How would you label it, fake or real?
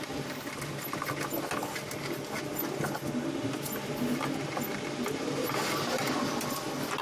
real